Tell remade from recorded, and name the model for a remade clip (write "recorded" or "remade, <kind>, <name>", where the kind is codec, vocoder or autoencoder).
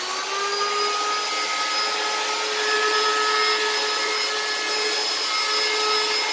recorded